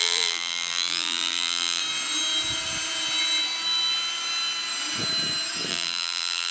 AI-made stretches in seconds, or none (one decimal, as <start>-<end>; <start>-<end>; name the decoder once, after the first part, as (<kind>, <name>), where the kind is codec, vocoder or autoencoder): 0.0-1.8 (vocoder, BigVGAN v2); 5.7-6.5